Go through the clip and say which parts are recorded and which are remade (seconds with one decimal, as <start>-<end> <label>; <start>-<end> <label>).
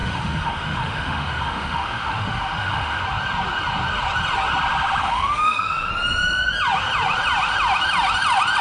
0.0-3.0 remade; 3.0-5.0 recorded; 5.0-5.9 remade; 5.9-8.6 recorded